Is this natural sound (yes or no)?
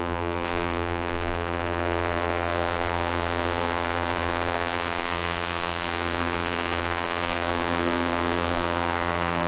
no